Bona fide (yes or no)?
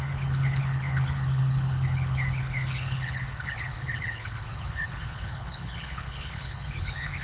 no